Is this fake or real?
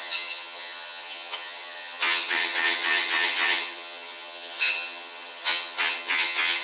fake